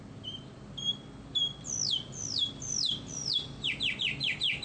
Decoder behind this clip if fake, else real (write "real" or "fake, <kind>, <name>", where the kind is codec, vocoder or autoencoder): real